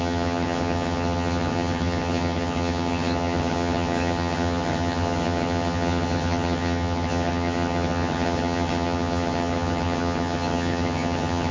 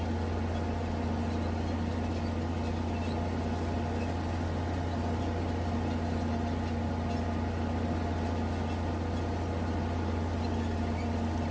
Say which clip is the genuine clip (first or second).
second